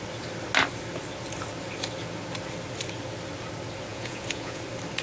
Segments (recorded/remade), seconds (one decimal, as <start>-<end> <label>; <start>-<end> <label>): 0.0-3.9 recorded; 3.9-4.6 remade; 4.6-5.0 recorded